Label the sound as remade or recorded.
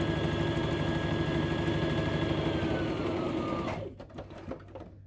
recorded